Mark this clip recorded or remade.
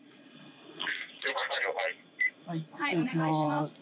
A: remade